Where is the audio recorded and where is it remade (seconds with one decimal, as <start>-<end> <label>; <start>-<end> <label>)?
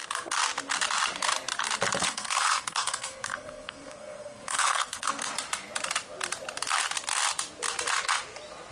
0.0-2.0 recorded; 2.0-5.3 remade; 5.3-8.7 recorded